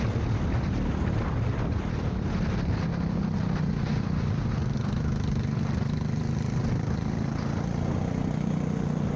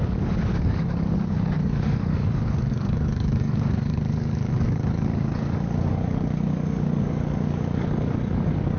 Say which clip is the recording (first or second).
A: first